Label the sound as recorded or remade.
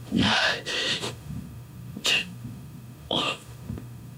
remade